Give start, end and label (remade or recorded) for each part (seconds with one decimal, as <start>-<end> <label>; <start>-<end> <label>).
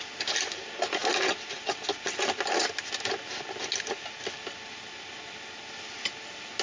0.0-6.6 recorded